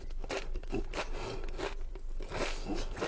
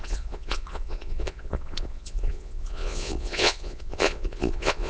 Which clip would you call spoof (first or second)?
second